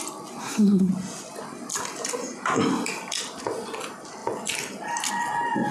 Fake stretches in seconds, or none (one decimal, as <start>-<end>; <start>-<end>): 0.4-0.9